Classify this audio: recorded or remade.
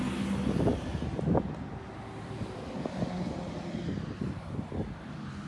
recorded